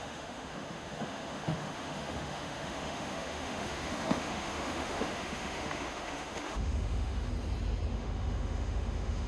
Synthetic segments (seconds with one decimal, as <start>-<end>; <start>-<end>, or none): 0.0-7.3; 7.9-9.3